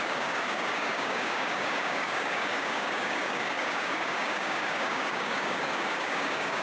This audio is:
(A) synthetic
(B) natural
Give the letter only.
A